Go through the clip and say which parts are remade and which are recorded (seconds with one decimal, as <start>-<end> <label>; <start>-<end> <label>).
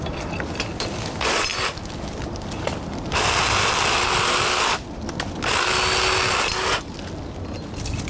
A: 0.0-8.1 recorded